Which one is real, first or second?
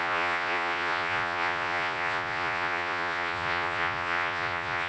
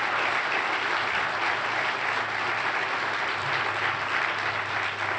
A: second